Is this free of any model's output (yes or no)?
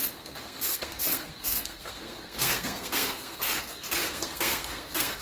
no